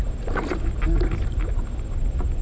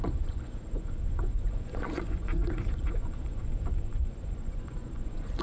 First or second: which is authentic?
first